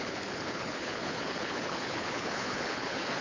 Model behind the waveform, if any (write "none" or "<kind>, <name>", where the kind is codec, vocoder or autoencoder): codec, HILCodec